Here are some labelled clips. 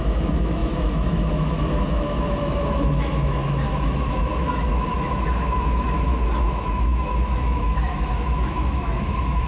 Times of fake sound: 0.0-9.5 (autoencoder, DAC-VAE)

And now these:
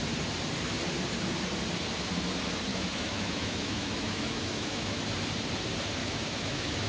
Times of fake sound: 2.7-5.0 (autoencoder, DAC-VAE); 6.0-6.9

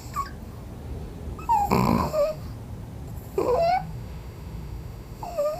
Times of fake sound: 1.9-2.4 (autoencoder, DAC-VAE); 3.7-5.6

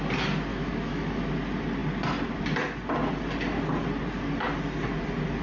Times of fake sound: 0.5-1.3 (autoencoder, DAC-VAE)

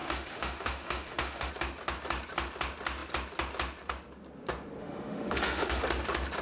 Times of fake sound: 0.0-1.5 (autoencoder, DAC-VAE); 4.8-5.8

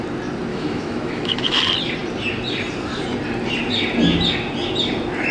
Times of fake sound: 0.5-1.6 (autoencoder, DAC-VAE)